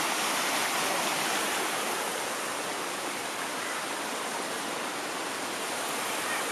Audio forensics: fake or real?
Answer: real